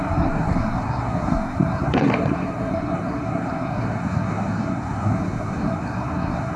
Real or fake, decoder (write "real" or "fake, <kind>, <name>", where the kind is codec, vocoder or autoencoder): fake, codec, SNAC